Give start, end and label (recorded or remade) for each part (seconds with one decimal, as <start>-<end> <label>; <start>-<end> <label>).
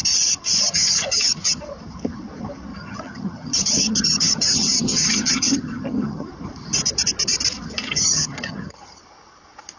0.0-0.4 recorded; 0.4-1.6 remade; 1.6-2.7 recorded; 2.7-6.3 remade; 6.3-7.8 recorded; 7.8-9.0 remade; 9.0-9.8 recorded